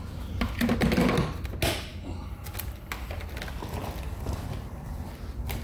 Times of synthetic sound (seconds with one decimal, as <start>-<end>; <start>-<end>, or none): none